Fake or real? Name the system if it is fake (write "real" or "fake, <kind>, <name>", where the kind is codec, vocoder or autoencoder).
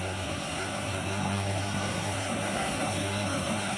fake, codec, SNAC